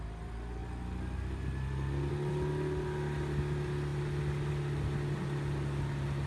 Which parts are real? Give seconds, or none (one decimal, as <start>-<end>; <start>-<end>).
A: 0.0-6.3